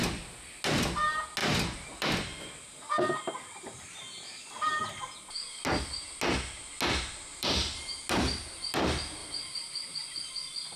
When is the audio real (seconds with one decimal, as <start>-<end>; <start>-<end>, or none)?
0.0-1.4; 2.1-7.3; 7.9-9.2